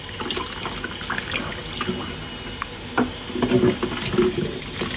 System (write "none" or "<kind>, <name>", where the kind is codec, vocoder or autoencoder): none